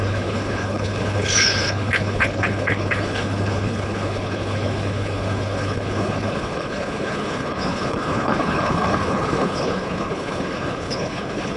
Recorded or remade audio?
remade